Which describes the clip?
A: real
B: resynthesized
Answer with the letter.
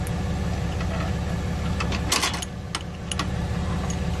A